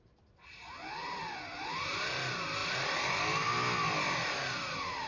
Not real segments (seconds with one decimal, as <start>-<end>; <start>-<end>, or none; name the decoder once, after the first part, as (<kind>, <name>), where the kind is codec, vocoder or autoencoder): none